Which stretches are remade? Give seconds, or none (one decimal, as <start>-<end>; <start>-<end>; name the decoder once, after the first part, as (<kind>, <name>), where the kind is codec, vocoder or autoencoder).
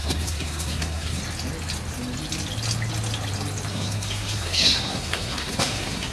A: 0.0-1.2 (codec, SNAC); 3.7-6.1